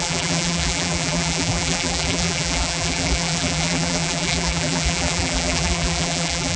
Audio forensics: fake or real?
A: fake